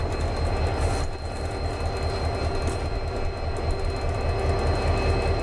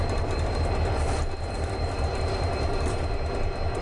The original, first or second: first